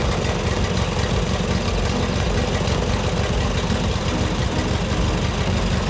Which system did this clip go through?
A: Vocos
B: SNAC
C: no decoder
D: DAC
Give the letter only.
C